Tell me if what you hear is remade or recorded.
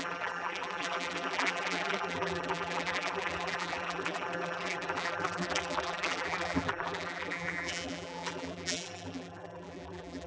remade